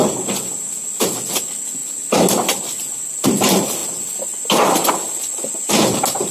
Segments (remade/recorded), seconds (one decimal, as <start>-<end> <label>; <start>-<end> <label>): 0.0-6.3 recorded